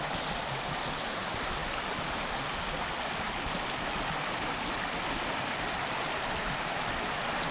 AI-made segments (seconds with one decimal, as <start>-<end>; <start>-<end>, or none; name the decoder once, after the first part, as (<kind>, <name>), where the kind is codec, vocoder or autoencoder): none